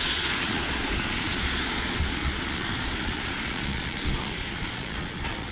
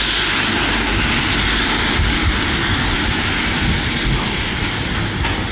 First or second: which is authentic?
second